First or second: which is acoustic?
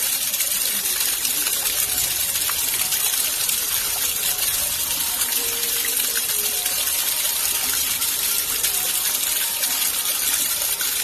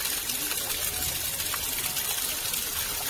second